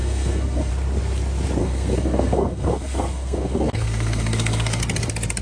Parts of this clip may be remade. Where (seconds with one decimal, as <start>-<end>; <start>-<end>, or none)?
0.0-0.7; 1.6-4.8

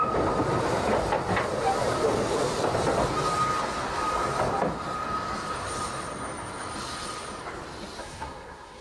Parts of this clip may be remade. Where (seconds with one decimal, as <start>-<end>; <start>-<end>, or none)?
8.0-8.8

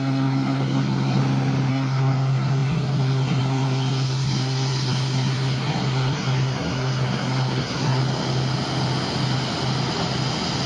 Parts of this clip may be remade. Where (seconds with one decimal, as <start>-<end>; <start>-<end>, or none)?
0.0-1.2; 1.7-8.0

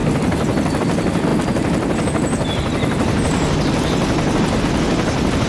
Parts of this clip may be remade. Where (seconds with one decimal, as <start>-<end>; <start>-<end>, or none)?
none

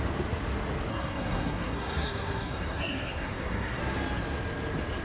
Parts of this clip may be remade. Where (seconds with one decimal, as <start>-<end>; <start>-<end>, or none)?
0.9-3.8